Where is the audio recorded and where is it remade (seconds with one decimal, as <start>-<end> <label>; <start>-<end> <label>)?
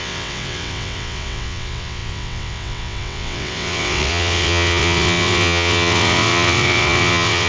0.0-7.5 remade